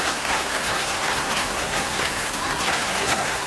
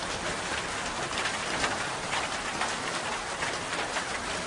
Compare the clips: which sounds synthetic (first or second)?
first